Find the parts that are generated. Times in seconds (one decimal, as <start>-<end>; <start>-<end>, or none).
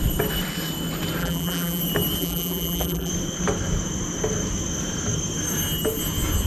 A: 1.2-1.8; 2.2-3.1